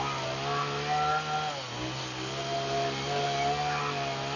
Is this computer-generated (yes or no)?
no